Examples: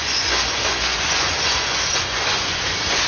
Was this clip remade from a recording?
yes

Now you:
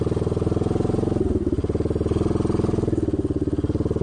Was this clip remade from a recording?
no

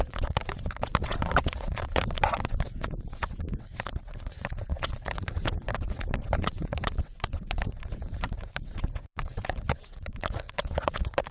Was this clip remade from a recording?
yes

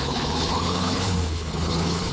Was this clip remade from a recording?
yes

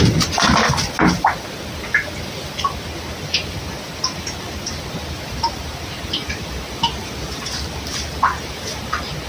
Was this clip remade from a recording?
no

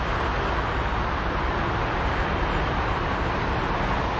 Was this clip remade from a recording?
no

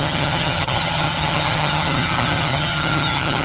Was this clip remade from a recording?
yes